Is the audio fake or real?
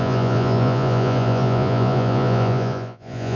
fake